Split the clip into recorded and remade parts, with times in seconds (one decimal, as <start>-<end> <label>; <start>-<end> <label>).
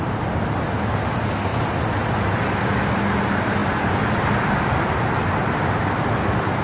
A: 0.0-6.6 recorded